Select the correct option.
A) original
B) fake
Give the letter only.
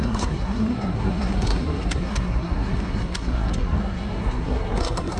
B